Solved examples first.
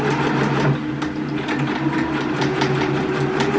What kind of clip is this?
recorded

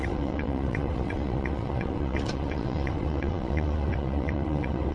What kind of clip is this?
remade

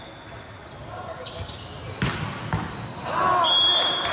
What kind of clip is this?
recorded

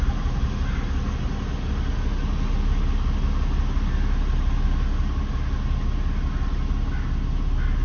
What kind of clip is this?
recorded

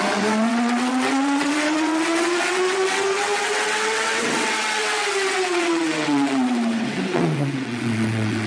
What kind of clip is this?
remade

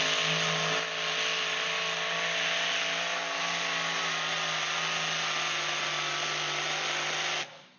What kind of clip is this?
recorded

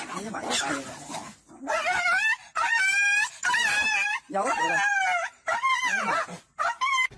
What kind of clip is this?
recorded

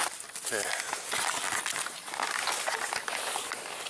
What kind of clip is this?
recorded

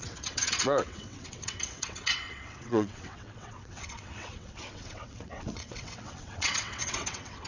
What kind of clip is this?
remade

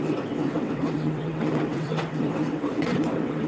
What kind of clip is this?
remade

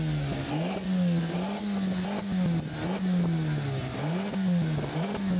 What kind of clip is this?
recorded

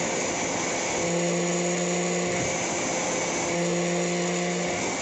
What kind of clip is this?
recorded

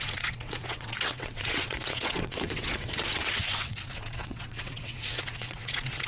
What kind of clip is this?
remade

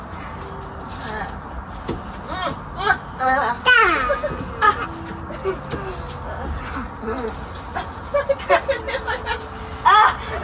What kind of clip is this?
recorded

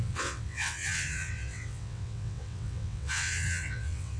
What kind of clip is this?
remade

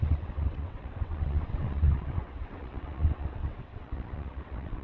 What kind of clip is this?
remade